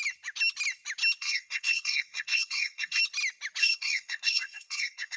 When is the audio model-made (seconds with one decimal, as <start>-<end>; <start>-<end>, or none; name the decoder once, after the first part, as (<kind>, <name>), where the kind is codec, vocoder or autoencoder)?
1.2-3.0 (codec, SNAC); 3.6-5.2